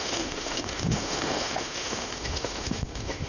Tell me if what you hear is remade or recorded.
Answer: remade